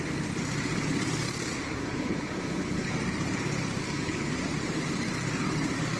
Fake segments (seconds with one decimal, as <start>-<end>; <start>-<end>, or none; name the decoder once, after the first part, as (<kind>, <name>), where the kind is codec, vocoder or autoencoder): 1.8-2.9 (codec, HILCodec); 3.8-4.3